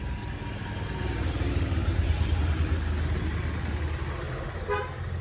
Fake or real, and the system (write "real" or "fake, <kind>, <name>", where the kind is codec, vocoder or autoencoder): real